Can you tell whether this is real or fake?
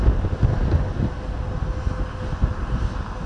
real